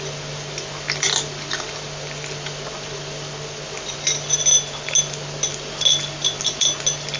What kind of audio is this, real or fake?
real